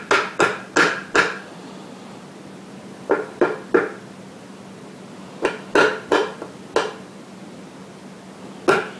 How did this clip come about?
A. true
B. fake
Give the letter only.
A